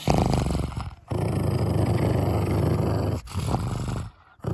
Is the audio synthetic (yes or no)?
no